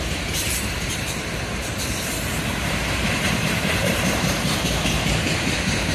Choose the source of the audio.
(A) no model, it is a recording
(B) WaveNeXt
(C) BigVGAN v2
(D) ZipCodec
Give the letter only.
C